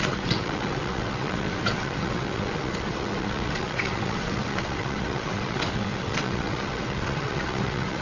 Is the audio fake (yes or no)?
yes